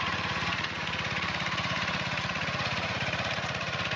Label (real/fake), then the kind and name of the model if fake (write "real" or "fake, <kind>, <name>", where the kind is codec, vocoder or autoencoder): fake, vocoder, Vocos